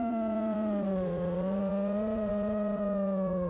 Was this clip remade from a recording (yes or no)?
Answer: yes